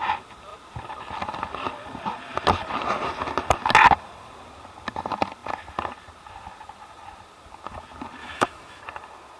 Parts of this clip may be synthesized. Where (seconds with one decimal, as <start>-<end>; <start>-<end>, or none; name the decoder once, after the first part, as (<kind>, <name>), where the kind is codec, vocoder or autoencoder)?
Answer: 8.2-8.8 (autoencoder, DAC-VAE)